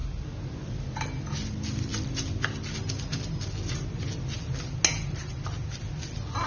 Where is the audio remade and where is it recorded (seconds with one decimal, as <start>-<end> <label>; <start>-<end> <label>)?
0.0-6.5 recorded